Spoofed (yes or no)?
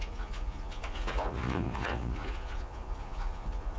yes